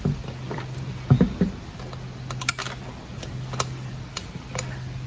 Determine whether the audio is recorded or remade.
recorded